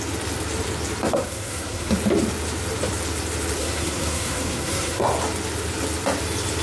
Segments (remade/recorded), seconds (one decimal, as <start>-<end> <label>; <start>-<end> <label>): 0.0-1.1 recorded; 1.1-1.9 remade; 1.9-3.6 recorded; 3.6-5.1 remade; 5.1-6.6 recorded